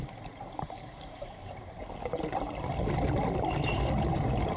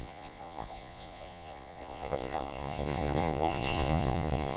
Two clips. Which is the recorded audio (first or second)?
first